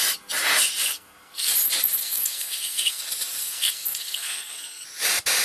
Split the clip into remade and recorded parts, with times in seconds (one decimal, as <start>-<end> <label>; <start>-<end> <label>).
0.0-0.9 recorded; 0.9-1.5 remade; 1.5-2.0 recorded; 2.0-3.0 remade; 3.0-3.4 recorded; 3.4-4.8 remade; 4.8-5.4 recorded